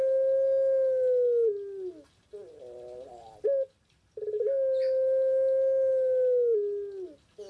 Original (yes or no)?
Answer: yes